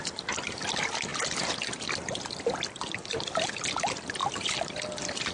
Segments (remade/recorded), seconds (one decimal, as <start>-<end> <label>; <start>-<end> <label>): 0.0-5.3 recorded